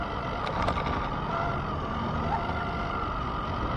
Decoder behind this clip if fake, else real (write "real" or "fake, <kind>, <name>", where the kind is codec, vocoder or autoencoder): real